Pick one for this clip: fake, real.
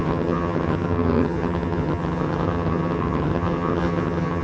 fake